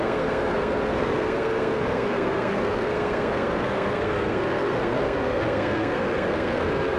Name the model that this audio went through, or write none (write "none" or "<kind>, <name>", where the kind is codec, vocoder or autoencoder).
codec, SNAC